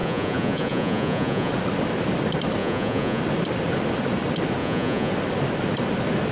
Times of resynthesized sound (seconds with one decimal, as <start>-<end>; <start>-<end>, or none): 0.0-1.5; 2.6-3.2; 4.6-5.1